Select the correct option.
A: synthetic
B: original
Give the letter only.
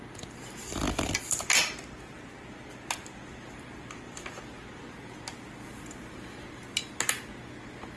B